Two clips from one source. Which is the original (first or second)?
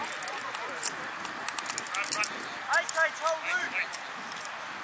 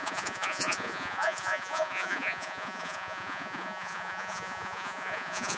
first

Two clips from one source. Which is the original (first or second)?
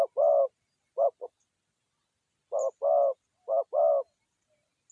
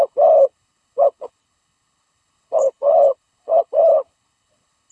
first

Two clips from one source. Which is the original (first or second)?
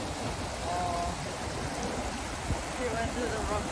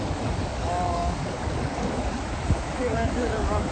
first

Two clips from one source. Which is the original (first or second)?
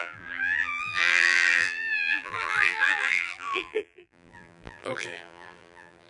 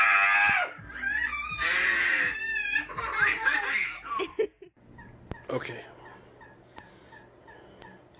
second